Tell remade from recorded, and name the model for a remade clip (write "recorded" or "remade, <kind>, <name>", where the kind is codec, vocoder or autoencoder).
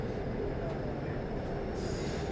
remade, vocoder, BigVGAN v2